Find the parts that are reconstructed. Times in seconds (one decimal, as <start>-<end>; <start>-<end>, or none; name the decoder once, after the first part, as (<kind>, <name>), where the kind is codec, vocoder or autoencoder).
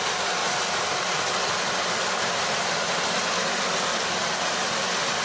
0.0-0.4 (vocoder, BigVGAN v2); 3.5-3.9; 4.5-5.2